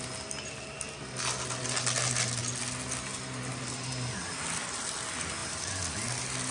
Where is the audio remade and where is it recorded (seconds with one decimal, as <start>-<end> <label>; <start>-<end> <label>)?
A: 0.0-6.5 recorded